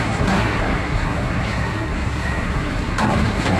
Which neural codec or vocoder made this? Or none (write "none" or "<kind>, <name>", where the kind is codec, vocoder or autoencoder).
codec, SNAC